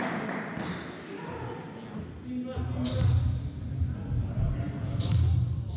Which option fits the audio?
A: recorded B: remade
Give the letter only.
A